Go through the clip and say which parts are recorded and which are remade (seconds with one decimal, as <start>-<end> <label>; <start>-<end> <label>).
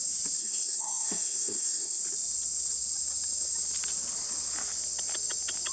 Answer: 0.0-0.4 recorded; 0.4-2.0 remade; 2.0-5.7 recorded